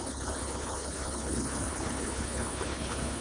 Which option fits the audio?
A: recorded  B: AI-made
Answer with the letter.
B